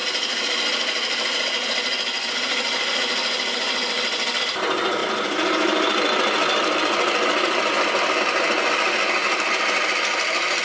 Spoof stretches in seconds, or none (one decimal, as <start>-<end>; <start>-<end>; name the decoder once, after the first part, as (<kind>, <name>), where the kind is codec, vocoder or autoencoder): 5.0-8.2 (vocoder, BigVGAN v2); 9.2-10.6